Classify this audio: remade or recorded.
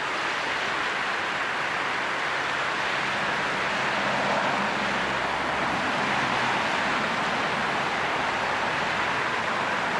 recorded